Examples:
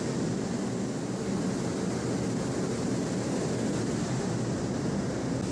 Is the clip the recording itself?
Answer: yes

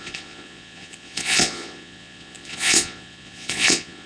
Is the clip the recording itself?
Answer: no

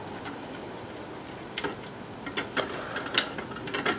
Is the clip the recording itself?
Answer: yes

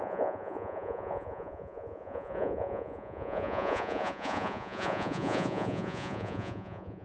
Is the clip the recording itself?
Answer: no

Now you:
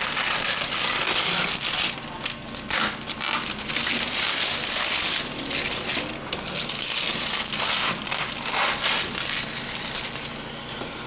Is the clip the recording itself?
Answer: yes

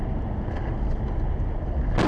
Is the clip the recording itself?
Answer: yes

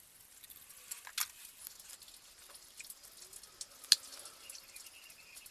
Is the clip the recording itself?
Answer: yes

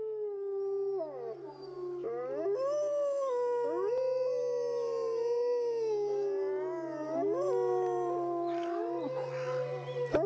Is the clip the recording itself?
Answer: yes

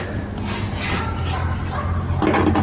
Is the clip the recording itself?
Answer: yes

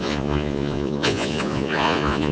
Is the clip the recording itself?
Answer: no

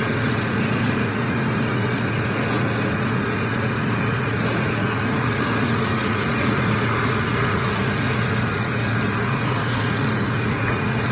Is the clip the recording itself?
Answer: no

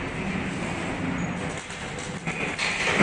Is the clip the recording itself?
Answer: yes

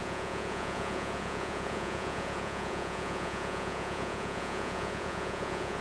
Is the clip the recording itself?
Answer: no